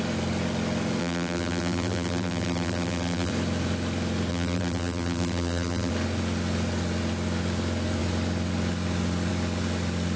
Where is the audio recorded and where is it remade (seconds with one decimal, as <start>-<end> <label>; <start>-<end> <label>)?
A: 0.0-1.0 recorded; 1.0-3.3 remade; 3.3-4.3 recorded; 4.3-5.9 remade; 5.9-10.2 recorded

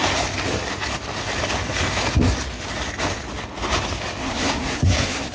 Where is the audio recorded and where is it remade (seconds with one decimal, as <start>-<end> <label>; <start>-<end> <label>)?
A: 0.0-4.2 recorded; 4.2-5.3 remade

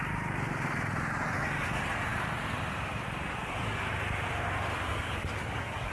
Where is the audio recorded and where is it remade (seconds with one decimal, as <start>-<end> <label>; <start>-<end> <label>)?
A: 0.0-3.4 recorded; 3.4-3.9 remade; 3.9-4.9 recorded; 4.9-5.9 remade